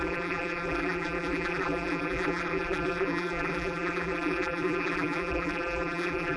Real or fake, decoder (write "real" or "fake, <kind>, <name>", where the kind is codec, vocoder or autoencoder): fake, vocoder, BigVGAN v2